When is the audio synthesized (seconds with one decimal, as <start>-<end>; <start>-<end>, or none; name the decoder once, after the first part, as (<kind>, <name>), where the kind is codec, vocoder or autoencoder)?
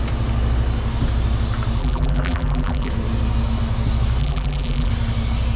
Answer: 1.8-2.9 (vocoder, BigVGAN v2); 4.2-4.9